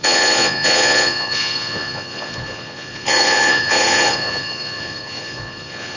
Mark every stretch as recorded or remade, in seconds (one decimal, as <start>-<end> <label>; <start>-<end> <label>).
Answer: 0.0-6.0 remade